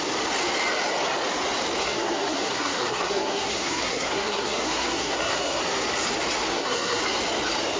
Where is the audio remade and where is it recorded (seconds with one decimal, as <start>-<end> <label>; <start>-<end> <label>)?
0.0-1.8 recorded; 1.8-5.6 remade; 5.6-6.5 recorded; 6.5-7.0 remade; 7.0-7.8 recorded